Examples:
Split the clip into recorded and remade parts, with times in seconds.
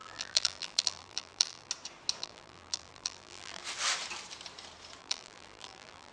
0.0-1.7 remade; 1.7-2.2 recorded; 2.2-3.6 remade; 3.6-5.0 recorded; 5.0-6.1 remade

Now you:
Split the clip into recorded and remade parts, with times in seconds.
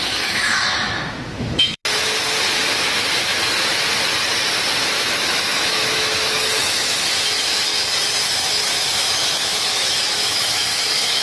0.0-1.8 remade; 1.8-4.9 recorded; 4.9-7.7 remade; 7.7-8.3 recorded; 8.3-11.2 remade